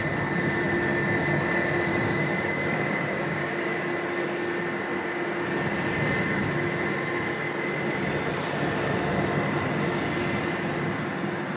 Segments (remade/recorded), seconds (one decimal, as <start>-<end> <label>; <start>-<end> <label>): 0.0-1.9 recorded; 1.9-3.8 remade; 3.8-11.6 recorded